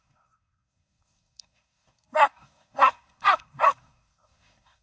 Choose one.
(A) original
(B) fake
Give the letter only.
B